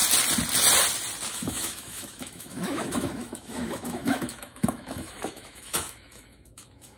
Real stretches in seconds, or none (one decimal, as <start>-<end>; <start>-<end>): 0.0-1.3